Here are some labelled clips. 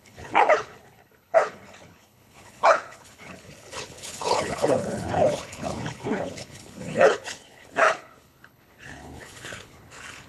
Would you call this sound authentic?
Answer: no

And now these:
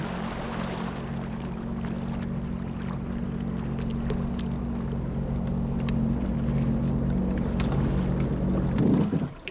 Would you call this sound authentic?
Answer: yes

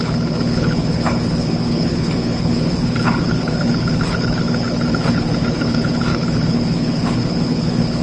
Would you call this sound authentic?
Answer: no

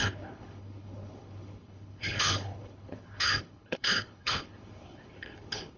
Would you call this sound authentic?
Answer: no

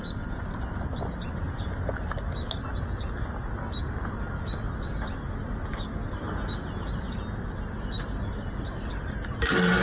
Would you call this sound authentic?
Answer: yes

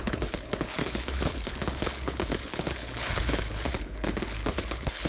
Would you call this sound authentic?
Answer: no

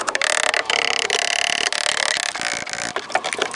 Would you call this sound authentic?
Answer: yes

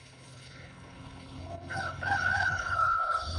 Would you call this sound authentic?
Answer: no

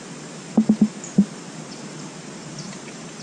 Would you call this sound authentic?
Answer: yes